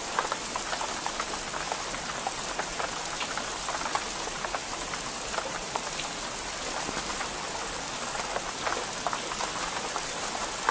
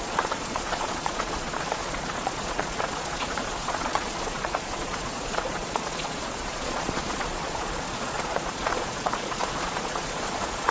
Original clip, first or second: first